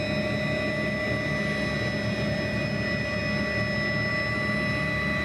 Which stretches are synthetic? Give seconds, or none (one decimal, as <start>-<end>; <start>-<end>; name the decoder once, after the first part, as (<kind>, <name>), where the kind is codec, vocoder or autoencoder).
none